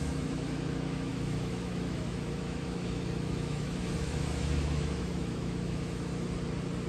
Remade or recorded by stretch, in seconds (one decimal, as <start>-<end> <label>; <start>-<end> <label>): 0.0-6.1 remade; 6.1-6.9 recorded